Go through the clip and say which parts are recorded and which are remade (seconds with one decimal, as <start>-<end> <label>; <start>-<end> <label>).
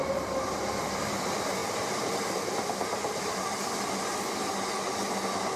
0.0-1.6 recorded; 1.6-3.8 remade; 3.8-5.6 recorded